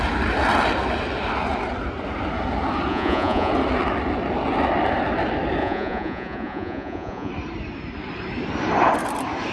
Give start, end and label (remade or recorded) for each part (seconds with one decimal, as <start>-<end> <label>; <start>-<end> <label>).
0.0-2.9 recorded; 2.9-3.5 remade; 3.5-5.6 recorded; 5.6-7.3 remade; 7.3-9.5 recorded